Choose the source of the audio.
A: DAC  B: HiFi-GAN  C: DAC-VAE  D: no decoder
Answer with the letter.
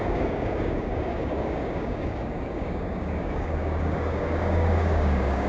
A